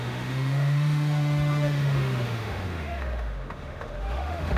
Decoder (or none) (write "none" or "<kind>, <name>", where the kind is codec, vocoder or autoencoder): autoencoder, DAC-VAE